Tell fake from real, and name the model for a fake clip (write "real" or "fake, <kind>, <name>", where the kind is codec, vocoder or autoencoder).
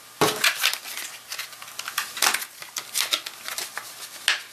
real